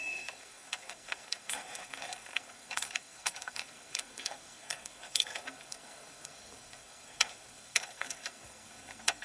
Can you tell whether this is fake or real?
fake